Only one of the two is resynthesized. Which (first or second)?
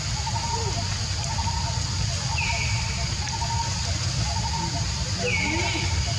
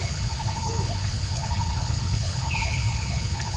second